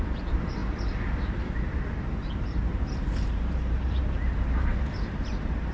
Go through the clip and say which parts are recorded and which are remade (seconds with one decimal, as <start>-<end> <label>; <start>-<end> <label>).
0.0-5.7 remade